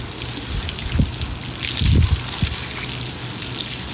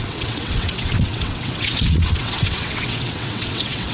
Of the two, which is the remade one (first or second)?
second